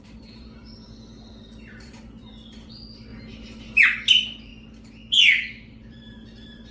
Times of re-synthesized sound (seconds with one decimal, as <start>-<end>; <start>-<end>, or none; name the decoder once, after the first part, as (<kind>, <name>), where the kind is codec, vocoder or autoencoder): 0.0-3.1 (vocoder, BigVGAN v2); 3.8-4.5; 5.7-6.7